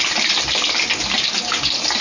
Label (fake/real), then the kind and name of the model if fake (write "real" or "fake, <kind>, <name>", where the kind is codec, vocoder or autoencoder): real